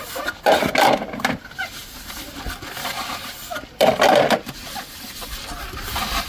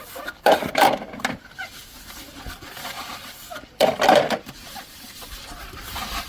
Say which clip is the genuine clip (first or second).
first